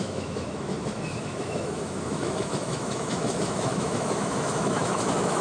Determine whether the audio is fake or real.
fake